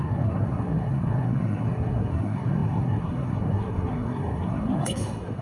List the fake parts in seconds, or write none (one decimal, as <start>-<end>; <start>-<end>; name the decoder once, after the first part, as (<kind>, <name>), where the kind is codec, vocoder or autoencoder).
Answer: 0.0-5.4 (codec, SNAC)